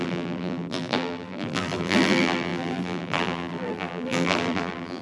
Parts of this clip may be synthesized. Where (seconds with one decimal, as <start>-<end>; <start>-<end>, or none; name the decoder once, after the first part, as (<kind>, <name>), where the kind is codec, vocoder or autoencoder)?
0.0-5.0 (vocoder, BigVGAN v2)